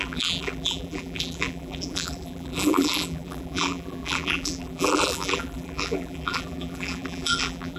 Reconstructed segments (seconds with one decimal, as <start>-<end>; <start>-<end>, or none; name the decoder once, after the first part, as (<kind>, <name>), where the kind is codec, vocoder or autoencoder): 0.0-7.8 (vocoder, BigVGAN v2)